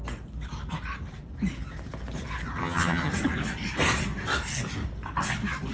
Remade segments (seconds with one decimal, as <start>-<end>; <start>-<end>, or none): 2.6-3.1